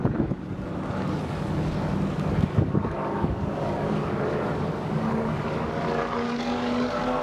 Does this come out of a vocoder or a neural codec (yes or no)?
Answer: yes